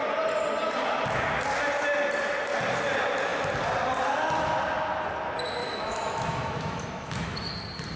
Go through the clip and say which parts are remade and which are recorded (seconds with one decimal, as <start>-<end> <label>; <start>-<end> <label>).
0.0-5.6 recorded; 5.6-7.5 remade; 7.5-8.0 recorded